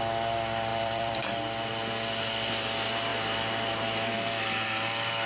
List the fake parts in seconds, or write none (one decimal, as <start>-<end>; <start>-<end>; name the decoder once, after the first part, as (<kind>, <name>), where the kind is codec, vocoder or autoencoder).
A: 0.7-1.2 (vocoder, BigVGAN v2)